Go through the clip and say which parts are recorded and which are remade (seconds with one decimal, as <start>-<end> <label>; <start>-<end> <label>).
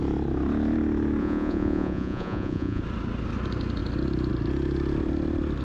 0.0-1.2 recorded; 1.2-2.8 remade; 2.8-5.6 recorded